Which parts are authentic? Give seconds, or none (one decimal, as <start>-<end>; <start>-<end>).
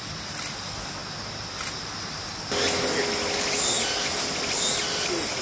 0.0-5.4